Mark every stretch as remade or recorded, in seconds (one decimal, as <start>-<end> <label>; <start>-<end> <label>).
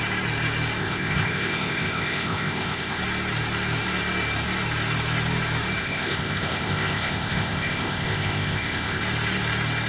0.0-0.8 recorded; 0.8-3.0 remade; 3.0-5.8 recorded; 5.8-9.0 remade; 9.0-9.9 recorded